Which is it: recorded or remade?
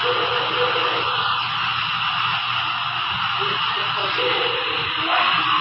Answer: recorded